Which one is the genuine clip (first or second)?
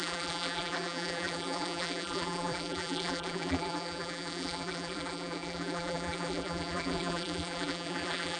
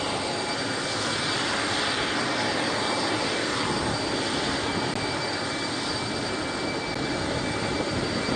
second